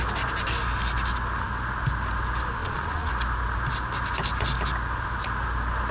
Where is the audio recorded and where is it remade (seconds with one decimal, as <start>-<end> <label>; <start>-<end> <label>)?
0.0-2.6 recorded; 2.6-3.1 remade; 3.1-5.9 recorded